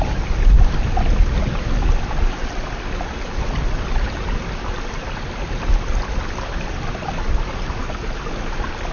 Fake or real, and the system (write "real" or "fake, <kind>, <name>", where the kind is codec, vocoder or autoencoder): real